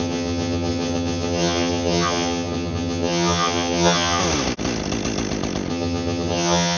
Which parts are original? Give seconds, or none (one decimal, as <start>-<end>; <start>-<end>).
4.2-5.7